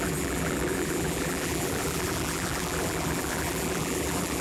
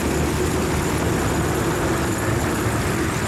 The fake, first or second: first